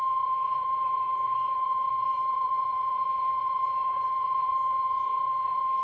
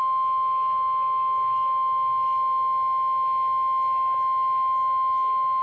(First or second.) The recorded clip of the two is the second